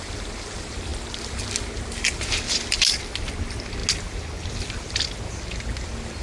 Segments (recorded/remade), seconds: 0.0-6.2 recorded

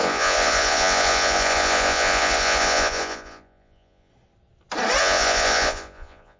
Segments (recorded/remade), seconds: 0.0-4.1 remade; 4.1-5.0 recorded; 5.0-6.4 remade

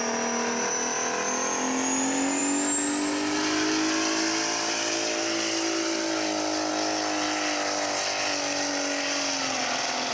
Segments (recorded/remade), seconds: 0.0-10.1 recorded

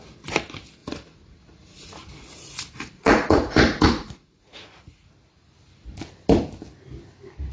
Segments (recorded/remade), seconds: 0.0-0.8 recorded; 0.8-5.1 remade; 5.1-7.5 recorded

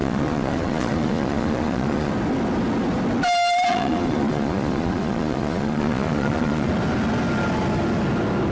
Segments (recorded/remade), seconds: 0.0-2.1 remade; 2.1-3.7 recorded; 3.7-6.7 remade; 6.7-8.5 recorded

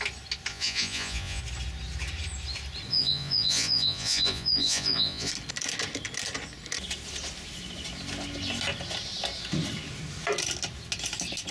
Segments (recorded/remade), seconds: 0.0-0.5 recorded; 0.5-1.4 remade; 1.4-2.9 recorded; 2.9-5.3 remade; 5.3-11.5 recorded

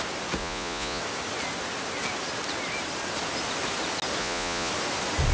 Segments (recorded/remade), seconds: 0.0-0.4 recorded; 0.4-1.0 remade; 1.0-4.2 recorded; 4.2-4.7 remade; 4.7-5.3 recorded

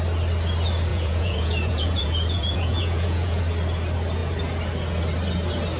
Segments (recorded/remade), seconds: 0.0-0.9 recorded; 0.9-3.4 remade; 3.4-5.8 recorded